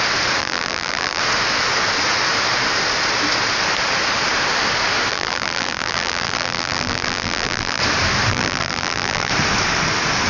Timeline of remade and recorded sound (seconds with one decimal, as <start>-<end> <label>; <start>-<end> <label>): 0.0-0.4 recorded; 0.4-1.2 remade; 1.2-5.1 recorded; 5.1-7.8 remade; 7.8-8.3 recorded; 8.3-9.3 remade; 9.3-10.3 recorded